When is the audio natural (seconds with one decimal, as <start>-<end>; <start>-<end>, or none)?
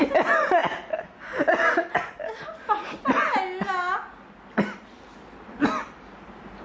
0.0-0.6; 1.7-6.6